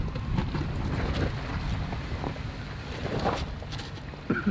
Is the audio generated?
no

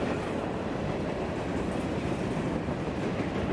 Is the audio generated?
no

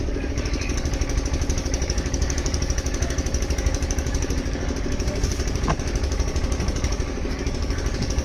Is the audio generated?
yes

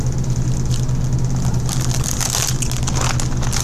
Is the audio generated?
no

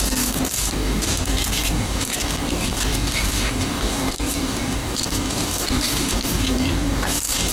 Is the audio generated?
yes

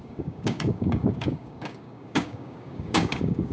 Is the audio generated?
yes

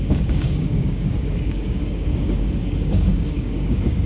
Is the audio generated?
yes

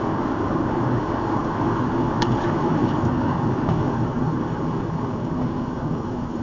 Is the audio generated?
yes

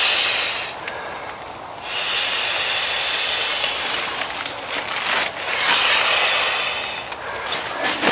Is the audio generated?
no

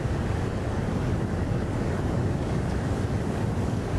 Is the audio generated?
yes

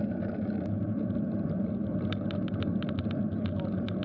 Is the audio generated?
no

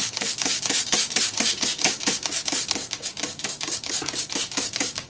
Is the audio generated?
yes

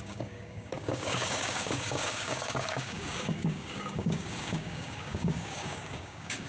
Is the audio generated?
yes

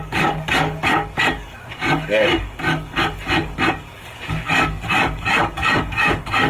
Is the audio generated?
yes